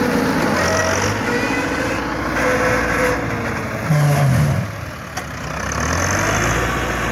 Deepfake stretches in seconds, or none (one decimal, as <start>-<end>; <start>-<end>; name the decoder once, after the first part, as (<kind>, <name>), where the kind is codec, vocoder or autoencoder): none